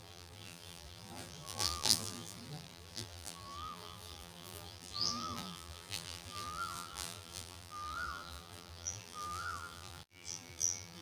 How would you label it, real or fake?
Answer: fake